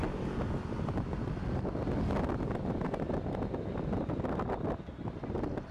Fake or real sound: real